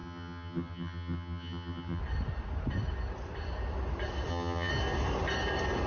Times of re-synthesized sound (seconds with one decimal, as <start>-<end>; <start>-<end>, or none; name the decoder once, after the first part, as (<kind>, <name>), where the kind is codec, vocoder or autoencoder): 0.0-2.0 (vocoder, HiFi-GAN); 4.3-4.7